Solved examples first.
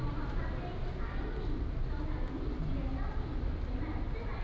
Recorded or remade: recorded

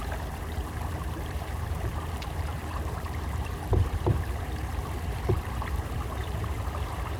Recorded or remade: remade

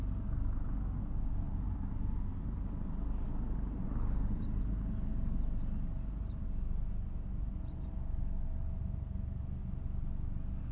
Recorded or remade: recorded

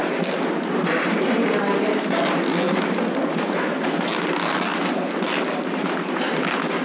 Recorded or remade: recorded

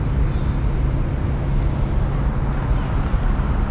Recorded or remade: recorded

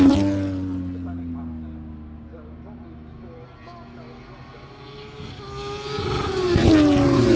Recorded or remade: recorded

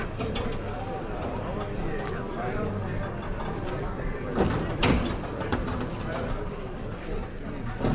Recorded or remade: remade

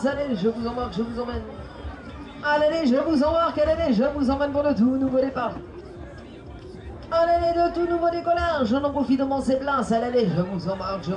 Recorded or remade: remade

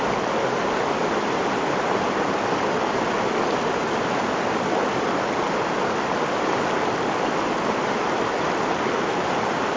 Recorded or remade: recorded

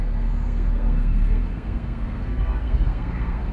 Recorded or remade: remade